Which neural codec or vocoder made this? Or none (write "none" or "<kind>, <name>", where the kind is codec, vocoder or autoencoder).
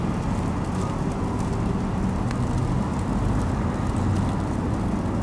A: none